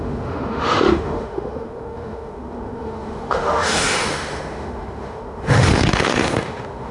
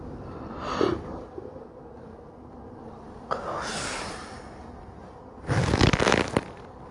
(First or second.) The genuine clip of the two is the second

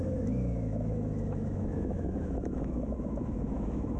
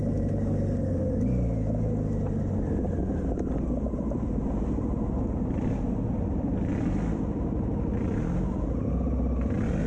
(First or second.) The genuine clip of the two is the second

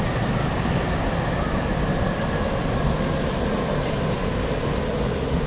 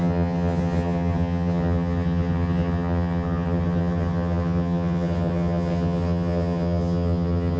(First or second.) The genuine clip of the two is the first